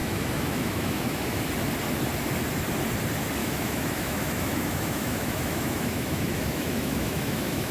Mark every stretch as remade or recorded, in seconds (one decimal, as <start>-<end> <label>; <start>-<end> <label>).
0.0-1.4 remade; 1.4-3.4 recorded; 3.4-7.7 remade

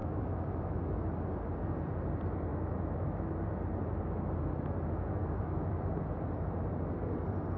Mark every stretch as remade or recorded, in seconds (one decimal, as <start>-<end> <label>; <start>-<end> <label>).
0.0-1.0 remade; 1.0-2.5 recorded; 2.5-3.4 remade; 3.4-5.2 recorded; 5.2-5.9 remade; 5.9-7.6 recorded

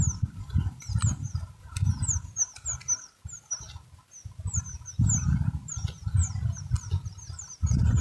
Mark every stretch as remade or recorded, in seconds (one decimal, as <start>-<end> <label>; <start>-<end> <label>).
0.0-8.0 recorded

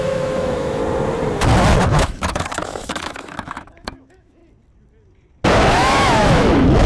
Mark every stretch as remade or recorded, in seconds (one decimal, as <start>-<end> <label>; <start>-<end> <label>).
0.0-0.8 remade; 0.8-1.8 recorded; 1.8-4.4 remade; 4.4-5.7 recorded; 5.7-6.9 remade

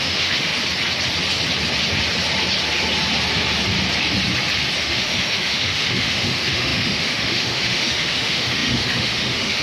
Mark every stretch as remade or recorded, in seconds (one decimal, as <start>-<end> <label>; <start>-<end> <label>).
0.0-0.5 remade; 0.5-4.8 recorded; 4.8-9.6 remade

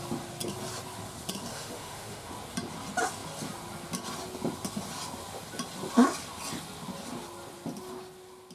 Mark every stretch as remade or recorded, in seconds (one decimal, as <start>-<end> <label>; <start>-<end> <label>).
0.0-1.5 recorded; 1.5-2.3 remade; 2.3-8.5 recorded

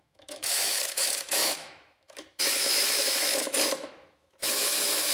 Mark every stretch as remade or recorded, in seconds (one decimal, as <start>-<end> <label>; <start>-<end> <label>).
0.0-5.1 remade